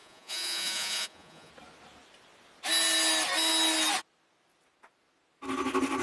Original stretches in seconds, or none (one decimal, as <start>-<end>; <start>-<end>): 1.5-6.0